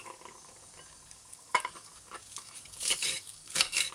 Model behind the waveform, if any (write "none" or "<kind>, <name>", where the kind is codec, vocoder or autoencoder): codec, DAC